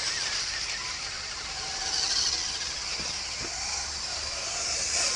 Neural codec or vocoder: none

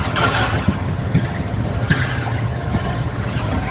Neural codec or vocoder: vocoder, HiFi-GAN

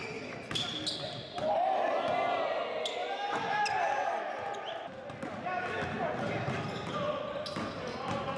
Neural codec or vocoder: none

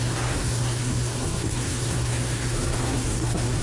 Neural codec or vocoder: codec, SNAC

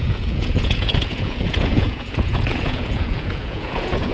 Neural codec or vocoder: vocoder, Vocos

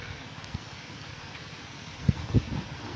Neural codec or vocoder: codec, SNAC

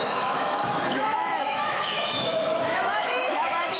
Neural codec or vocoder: autoencoder, DAC-VAE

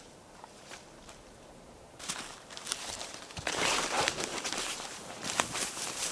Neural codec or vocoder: vocoder, BigVGAN v2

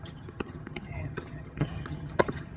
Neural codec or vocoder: vocoder, HiFi-GAN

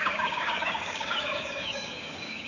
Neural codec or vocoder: codec, DAC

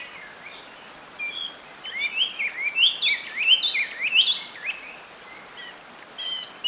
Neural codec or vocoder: none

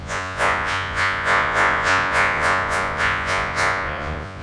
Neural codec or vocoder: vocoder, Vocos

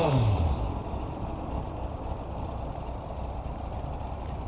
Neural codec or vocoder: none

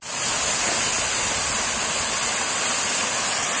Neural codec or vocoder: none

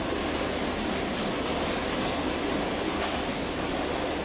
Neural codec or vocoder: none